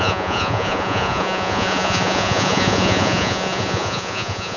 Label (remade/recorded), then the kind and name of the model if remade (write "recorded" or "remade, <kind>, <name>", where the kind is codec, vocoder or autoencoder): remade, vocoder, Vocos